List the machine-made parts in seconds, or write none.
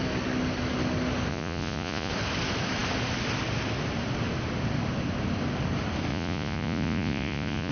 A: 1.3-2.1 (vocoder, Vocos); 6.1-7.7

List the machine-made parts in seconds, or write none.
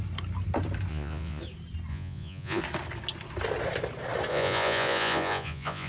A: 0.9-1.4 (vocoder, Vocos); 1.9-2.6; 4.3-5.9